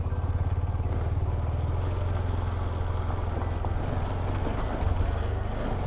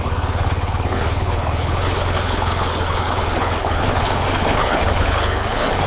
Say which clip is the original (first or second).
first